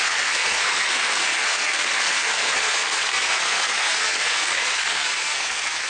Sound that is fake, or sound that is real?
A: fake